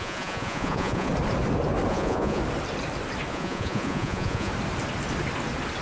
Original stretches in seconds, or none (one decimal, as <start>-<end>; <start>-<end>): 1.1-1.9; 2.4-3.3; 4.5-5.8